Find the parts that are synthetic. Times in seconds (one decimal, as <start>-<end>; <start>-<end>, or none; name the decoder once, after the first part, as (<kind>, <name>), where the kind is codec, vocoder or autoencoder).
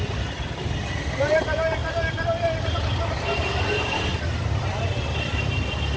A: 0.0-1.8 (vocoder, BigVGAN v2); 2.6-4.1